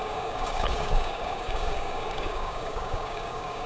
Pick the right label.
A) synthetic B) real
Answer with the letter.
A